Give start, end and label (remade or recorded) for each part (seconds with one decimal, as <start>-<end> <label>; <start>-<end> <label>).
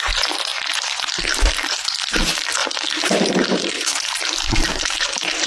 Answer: 0.0-5.5 recorded